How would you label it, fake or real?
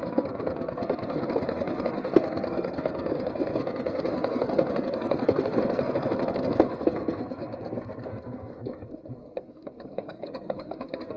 fake